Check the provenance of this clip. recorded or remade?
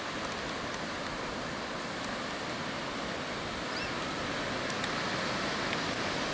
recorded